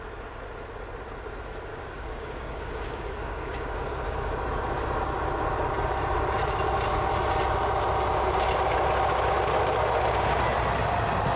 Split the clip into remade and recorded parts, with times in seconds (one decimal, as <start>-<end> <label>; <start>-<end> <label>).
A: 0.0-1.7 recorded; 1.7-4.3 remade; 4.3-11.4 recorded